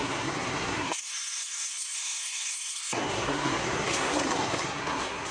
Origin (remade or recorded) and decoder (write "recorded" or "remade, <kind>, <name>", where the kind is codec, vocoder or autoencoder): remade, codec, SNAC